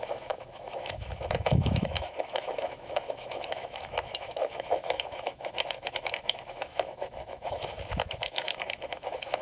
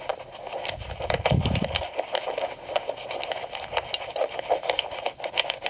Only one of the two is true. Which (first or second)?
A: second